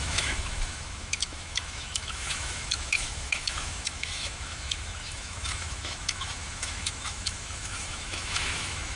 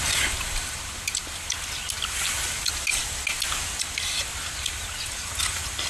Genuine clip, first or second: second